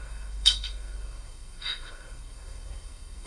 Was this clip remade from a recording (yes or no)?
yes